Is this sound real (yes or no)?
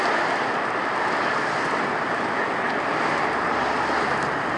yes